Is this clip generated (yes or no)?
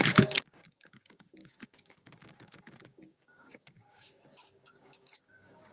yes